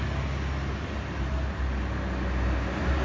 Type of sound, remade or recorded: recorded